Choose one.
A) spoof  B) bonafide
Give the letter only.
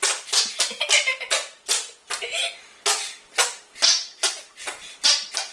B